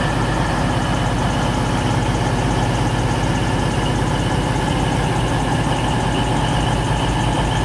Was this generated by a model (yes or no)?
no